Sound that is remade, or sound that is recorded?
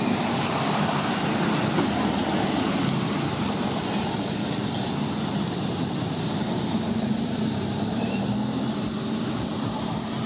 recorded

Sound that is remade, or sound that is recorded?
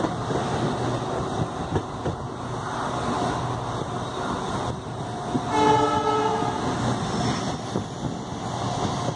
recorded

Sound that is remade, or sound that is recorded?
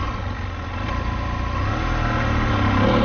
recorded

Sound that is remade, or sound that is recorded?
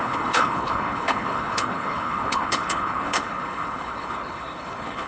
remade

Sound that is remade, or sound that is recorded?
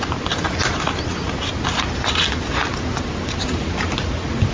recorded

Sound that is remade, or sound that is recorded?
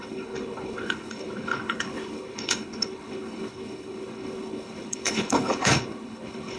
remade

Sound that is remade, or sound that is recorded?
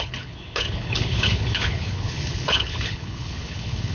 remade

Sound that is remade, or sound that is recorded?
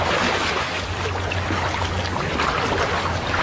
recorded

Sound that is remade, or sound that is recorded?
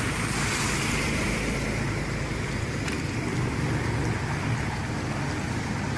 recorded